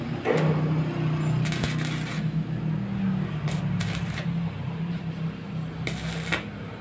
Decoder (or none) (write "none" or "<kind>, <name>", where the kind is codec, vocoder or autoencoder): none